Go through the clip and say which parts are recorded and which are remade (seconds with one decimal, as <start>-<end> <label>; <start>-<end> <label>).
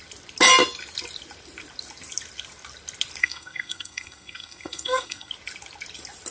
0.0-3.2 recorded; 3.2-5.3 remade; 5.3-6.3 recorded